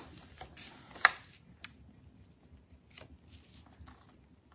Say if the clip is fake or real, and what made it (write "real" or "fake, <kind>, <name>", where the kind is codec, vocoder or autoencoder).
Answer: real